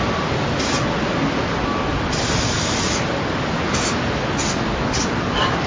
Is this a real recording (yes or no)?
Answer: yes